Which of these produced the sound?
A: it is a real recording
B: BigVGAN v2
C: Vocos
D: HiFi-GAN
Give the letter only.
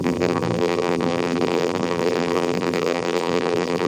B